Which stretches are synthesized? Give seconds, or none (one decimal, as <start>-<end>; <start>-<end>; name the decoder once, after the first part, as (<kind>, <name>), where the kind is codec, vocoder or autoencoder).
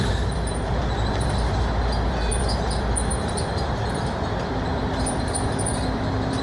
0.0-6.4 (vocoder, BigVGAN v2)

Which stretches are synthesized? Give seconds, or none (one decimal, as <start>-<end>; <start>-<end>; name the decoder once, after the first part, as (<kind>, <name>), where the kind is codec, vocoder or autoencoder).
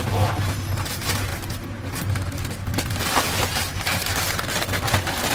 none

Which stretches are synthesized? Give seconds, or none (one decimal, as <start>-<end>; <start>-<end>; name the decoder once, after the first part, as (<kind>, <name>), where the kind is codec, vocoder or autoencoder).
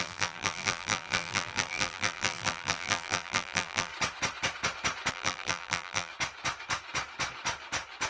0.0-3.9 (vocoder, BigVGAN v2); 5.1-6.1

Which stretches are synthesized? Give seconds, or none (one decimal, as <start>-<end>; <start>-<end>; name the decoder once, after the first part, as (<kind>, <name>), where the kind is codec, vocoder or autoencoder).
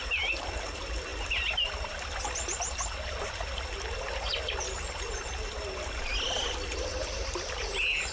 none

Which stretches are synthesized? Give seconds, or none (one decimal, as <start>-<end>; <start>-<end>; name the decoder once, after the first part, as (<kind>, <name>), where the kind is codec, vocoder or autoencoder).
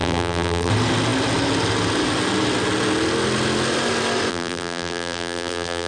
0.0-0.7 (vocoder, BigVGAN v2); 4.3-5.9